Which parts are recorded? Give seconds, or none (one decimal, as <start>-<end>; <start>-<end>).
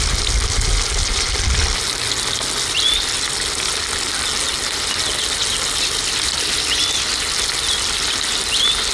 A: 0.0-8.9